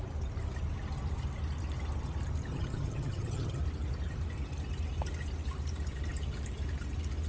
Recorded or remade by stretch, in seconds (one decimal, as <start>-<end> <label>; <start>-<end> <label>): 0.0-2.5 recorded; 2.5-3.6 remade; 3.6-7.3 recorded